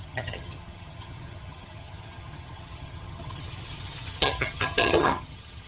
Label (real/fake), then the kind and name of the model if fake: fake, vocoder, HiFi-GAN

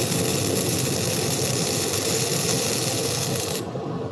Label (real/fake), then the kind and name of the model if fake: real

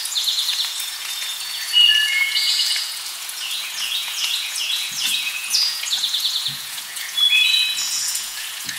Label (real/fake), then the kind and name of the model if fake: fake, vocoder, Vocos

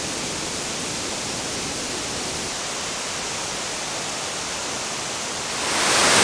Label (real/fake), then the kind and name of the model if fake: real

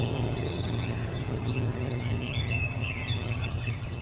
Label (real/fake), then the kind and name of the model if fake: fake, vocoder, HiFi-GAN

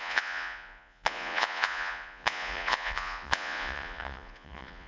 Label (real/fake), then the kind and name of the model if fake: fake, vocoder, Vocos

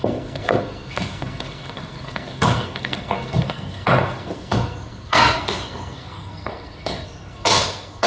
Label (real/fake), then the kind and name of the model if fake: fake, codec, SNAC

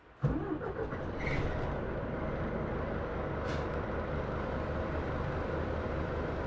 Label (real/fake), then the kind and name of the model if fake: real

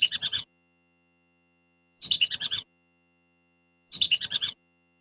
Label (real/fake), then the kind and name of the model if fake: fake, vocoder, HiFi-GAN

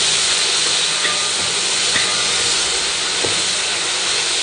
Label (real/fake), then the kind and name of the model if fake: fake, vocoder, Vocos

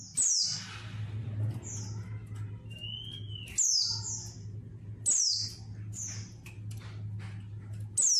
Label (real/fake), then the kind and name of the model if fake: real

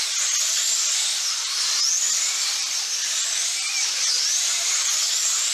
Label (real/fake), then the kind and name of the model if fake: real